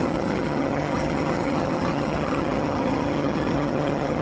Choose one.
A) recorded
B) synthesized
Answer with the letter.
B